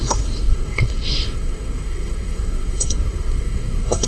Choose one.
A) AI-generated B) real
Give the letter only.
A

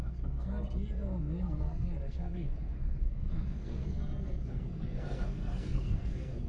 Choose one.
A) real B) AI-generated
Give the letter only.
B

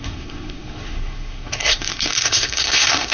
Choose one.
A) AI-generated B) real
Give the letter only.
A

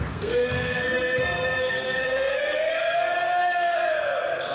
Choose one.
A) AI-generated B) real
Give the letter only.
A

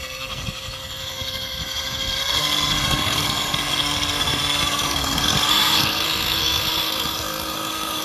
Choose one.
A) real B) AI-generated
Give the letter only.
B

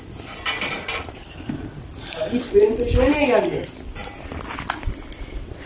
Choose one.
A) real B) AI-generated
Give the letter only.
A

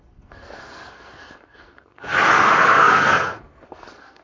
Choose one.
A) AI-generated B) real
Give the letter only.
A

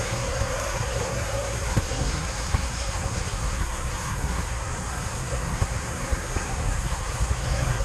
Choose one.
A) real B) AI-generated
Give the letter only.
B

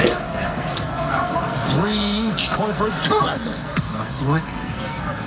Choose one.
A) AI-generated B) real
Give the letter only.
A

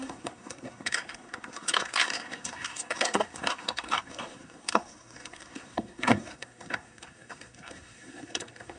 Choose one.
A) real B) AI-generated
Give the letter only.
B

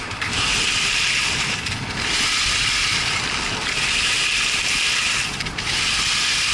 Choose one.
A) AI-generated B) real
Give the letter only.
B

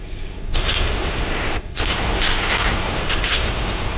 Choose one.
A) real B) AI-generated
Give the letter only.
B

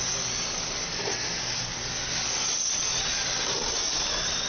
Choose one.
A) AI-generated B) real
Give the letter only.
B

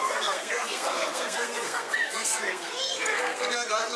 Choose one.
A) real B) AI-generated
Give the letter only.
B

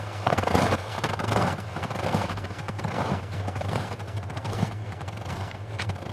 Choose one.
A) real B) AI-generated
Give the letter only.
B